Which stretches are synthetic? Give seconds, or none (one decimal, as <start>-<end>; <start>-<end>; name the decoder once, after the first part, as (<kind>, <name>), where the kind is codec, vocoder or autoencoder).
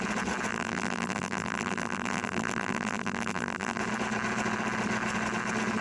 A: 0.5-3.8 (vocoder, BigVGAN v2)